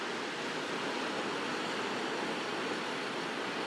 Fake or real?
real